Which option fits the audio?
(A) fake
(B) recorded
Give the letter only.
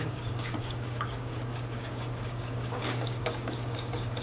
A